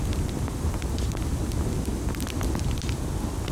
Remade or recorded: recorded